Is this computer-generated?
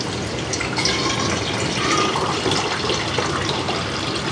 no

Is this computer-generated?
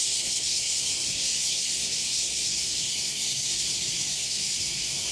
yes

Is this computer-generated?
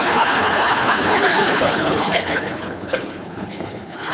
yes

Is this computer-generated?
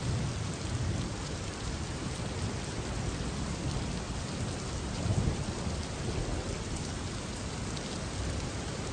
yes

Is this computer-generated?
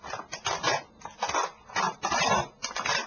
no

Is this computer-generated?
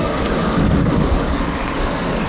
yes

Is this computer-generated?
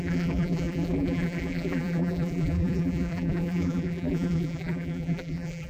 yes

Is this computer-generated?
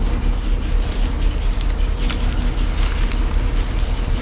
no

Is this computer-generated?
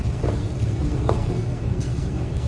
yes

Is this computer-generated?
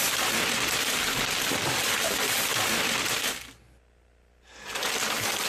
no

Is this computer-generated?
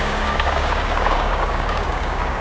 yes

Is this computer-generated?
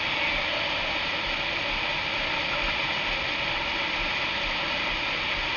no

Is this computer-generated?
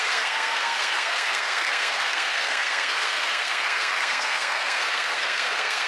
yes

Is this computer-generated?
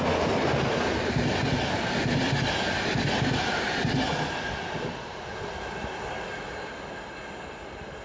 no